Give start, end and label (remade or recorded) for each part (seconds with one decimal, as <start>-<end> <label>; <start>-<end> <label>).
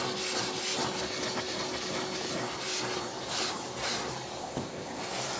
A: 0.0-4.4 recorded; 4.4-5.0 remade; 5.0-5.4 recorded